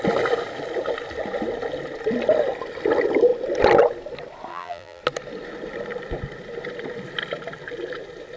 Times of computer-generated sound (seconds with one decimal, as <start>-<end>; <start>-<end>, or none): 4.5-5.0